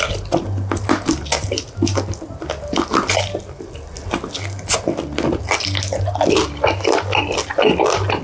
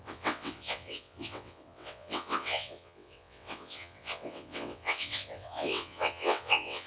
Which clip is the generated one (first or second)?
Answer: second